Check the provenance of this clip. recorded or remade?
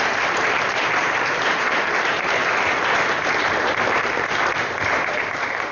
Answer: remade